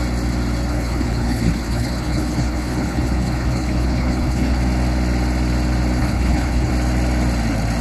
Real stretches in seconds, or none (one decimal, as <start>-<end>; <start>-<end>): 0.0-0.7; 4.6-6.0; 6.7-7.8